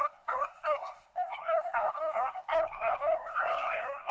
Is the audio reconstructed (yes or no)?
yes